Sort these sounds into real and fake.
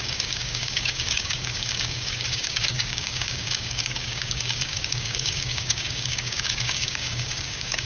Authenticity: fake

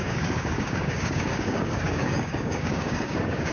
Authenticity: fake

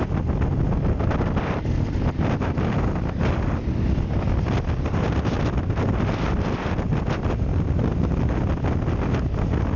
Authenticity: real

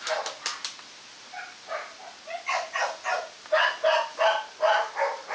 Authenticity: real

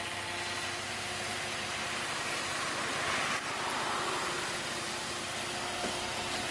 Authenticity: real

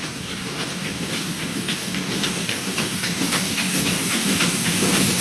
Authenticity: fake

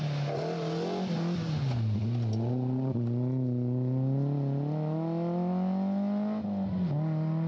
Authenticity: real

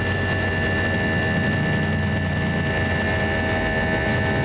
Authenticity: real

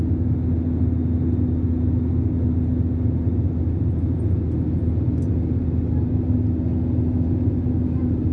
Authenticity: real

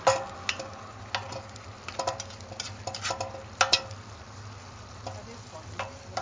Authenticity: real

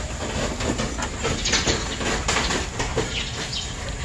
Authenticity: real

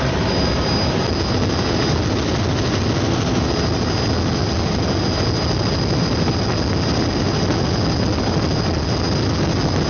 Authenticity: real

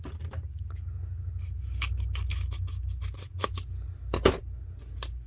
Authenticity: real